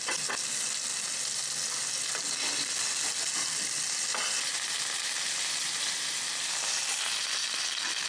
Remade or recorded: recorded